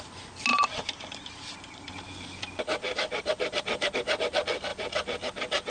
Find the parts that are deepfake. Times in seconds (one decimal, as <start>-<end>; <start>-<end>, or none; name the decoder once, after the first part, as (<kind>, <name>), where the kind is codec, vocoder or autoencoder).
0.5-1.9 (vocoder, BigVGAN v2); 2.7-3.9; 4.7-5.7